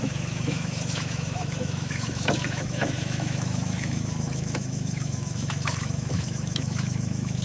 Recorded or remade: remade